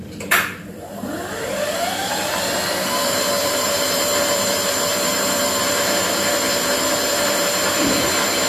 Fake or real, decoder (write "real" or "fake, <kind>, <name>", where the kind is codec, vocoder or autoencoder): fake, vocoder, BigVGAN v2